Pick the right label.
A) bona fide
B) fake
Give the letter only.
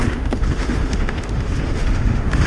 B